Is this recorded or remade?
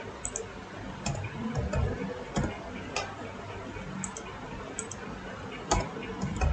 recorded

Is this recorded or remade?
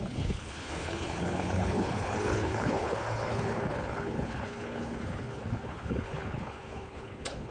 remade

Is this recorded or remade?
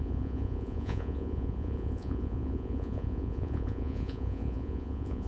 remade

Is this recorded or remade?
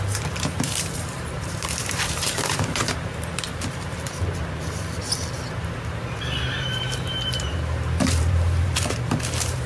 remade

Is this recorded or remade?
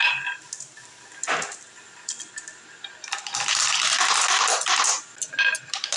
recorded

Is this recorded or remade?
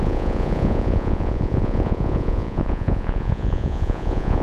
remade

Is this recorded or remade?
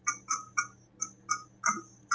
recorded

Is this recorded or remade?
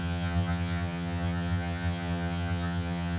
remade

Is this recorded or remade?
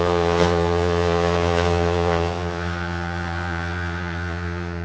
remade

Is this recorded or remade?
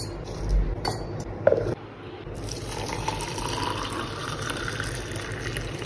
remade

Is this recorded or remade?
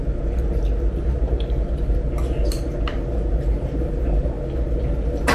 recorded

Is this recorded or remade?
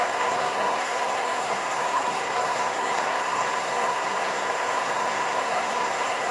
remade